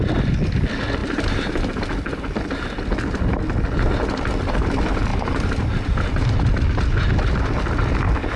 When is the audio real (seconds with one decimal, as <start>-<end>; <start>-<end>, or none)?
0.0-1.0; 1.8-5.1; 6.4-8.4